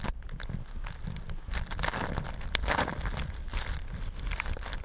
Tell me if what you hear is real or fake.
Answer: real